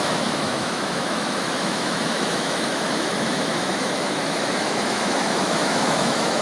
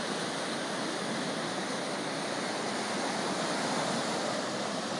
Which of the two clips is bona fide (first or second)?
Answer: second